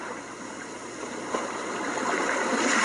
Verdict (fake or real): real